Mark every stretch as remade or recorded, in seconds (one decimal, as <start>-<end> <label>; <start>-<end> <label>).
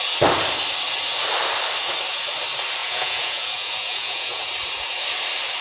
0.0-2.8 recorded; 2.8-4.5 remade; 4.5-5.6 recorded